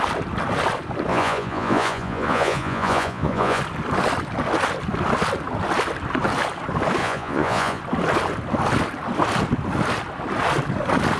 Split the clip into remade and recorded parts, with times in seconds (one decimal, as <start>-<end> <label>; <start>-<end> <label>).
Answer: 0.0-1.1 recorded; 1.1-3.6 remade; 3.6-7.0 recorded; 7.0-7.8 remade; 7.8-11.2 recorded